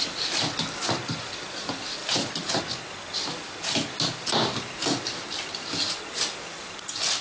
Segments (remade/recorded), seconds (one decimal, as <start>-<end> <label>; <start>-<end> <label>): 0.0-2.0 recorded; 2.0-2.6 remade; 2.6-7.2 recorded